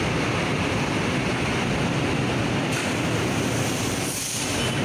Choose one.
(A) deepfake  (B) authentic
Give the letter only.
B